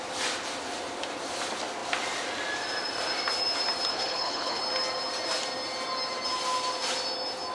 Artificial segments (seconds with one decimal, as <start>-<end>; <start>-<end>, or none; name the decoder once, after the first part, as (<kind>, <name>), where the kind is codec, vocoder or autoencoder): 3.9-4.6 (codec, HILCodec)